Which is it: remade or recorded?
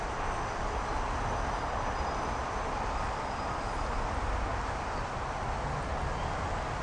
recorded